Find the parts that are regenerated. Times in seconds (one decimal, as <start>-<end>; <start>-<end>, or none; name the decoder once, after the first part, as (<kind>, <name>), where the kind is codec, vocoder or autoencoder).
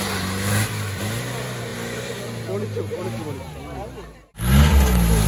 none